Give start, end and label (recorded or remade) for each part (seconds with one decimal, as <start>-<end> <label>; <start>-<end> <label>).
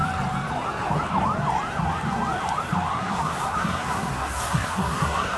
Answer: 0.0-2.9 recorded; 2.9-5.4 remade